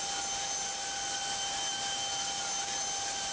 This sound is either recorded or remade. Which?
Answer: recorded